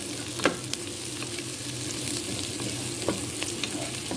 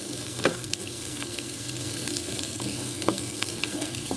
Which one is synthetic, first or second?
second